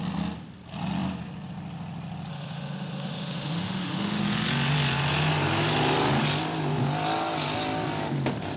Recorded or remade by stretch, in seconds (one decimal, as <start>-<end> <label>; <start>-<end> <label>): 0.0-2.3 recorded; 2.3-4.2 remade; 4.2-8.6 recorded